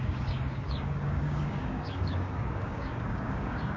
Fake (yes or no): yes